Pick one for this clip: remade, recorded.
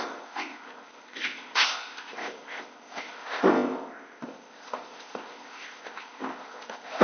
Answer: remade